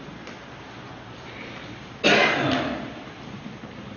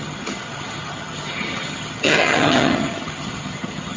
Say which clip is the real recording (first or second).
first